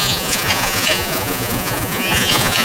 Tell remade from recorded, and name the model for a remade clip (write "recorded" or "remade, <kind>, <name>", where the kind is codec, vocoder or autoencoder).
remade, vocoder, Vocos